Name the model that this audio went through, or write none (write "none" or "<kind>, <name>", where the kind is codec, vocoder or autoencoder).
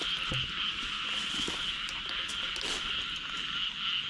none